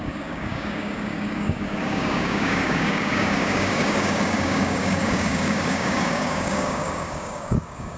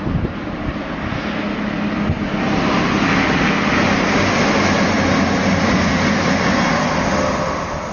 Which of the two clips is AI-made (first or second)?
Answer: first